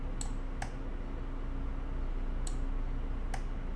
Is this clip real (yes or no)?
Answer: yes